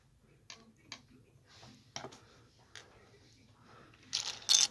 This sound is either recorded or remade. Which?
recorded